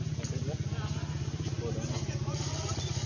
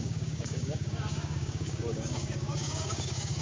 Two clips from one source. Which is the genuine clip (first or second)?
first